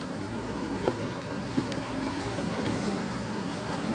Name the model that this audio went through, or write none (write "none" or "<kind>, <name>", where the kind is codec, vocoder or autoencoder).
codec, SNAC